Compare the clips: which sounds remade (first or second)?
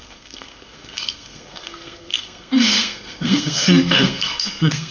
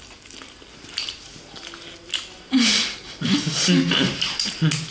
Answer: first